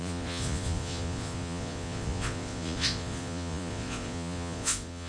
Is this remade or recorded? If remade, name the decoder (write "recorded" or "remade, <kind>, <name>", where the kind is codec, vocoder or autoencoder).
remade, vocoder, Vocos